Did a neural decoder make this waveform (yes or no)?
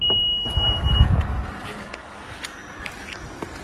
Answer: no